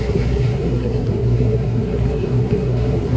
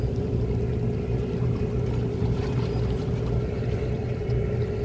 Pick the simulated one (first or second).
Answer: first